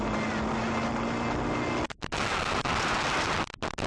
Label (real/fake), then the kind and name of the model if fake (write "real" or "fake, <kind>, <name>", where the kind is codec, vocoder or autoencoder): real